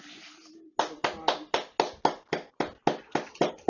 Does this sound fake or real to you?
real